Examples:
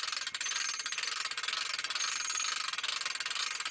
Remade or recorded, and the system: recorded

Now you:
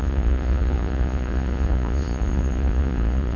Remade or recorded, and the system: remade, vocoder, Vocos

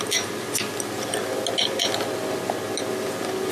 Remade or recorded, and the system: recorded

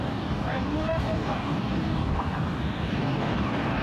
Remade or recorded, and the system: remade, codec, DAC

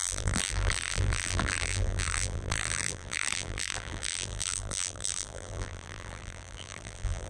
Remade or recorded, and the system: remade, vocoder, BigVGAN v2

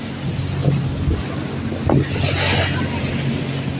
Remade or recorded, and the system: recorded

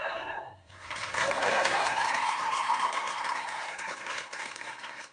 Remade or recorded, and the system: remade, codec, SNAC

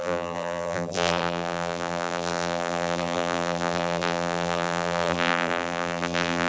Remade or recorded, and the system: remade, vocoder, BigVGAN v2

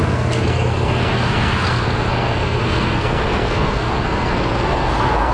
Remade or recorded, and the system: remade, codec, SNAC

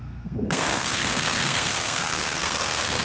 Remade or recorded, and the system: remade, codec, SNAC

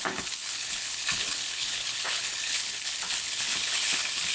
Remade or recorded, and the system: remade, codec, HILCodec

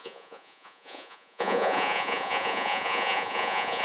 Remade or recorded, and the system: remade, vocoder, Vocos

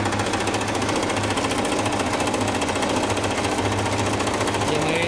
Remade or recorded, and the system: recorded